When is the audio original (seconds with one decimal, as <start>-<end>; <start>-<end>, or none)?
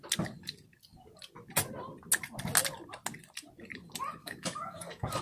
0.0-4.2